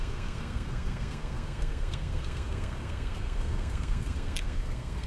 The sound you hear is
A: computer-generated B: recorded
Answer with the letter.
A